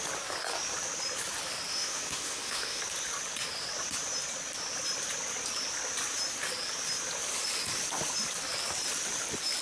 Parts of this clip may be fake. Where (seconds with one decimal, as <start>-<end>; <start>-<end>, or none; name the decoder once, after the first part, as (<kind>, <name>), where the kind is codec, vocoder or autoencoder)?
1.7-2.8 (autoencoder, DAC-VAE)